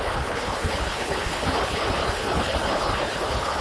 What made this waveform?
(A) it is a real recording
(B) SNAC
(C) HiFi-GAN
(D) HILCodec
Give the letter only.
D